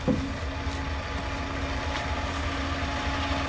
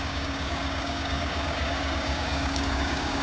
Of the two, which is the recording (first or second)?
first